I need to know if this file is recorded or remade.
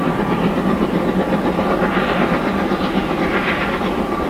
recorded